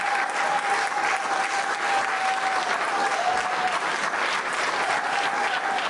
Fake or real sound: real